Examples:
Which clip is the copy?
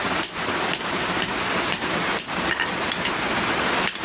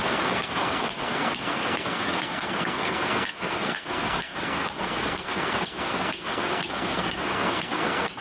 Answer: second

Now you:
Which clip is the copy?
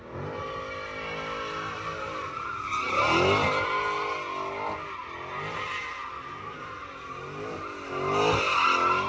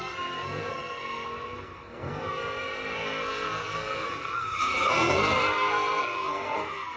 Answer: second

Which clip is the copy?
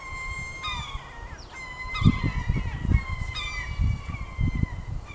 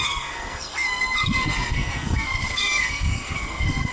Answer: second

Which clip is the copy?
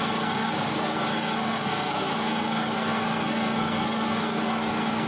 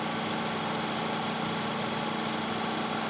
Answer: first